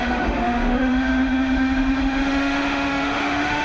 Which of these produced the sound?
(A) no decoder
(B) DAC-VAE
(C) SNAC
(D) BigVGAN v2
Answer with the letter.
B